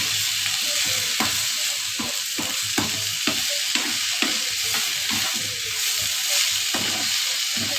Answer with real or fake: real